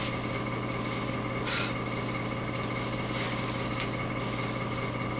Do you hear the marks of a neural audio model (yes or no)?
no